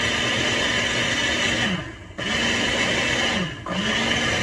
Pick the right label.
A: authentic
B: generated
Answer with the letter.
A